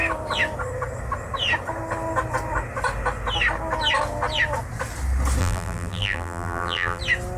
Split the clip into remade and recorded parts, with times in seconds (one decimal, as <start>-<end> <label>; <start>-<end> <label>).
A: 0.0-5.4 recorded; 5.4-7.0 remade; 7.0-7.4 recorded